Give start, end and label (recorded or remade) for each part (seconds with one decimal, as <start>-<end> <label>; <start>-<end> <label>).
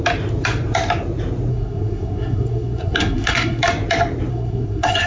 0.0-1.5 recorded; 1.5-3.6 remade; 3.6-4.3 recorded; 4.3-5.1 remade